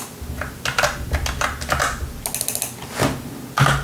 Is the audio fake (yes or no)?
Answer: no